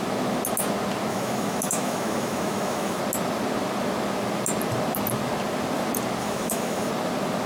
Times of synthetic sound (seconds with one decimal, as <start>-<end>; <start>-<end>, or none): 1.1-3.0; 6.2-6.9